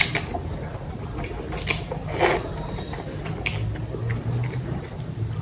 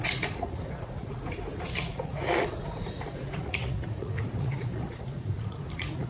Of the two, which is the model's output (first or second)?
second